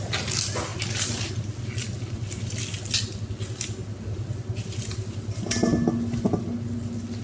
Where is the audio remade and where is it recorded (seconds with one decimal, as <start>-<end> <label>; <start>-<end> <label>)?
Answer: 0.0-7.2 recorded